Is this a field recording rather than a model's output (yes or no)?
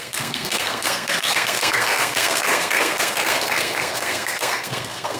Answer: no